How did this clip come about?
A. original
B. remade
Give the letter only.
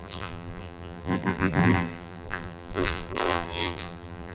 B